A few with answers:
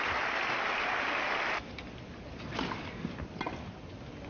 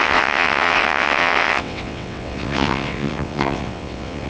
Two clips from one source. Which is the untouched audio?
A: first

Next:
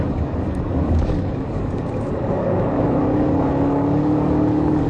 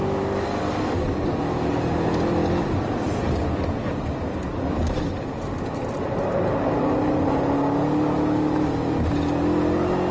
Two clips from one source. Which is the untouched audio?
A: second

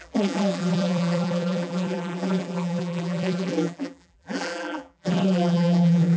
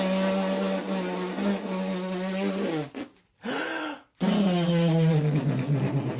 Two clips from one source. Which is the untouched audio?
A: second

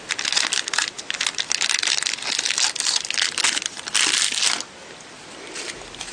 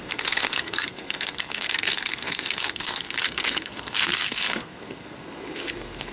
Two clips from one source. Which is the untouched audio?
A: first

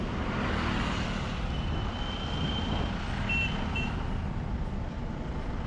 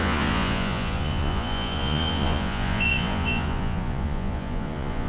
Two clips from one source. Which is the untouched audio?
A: first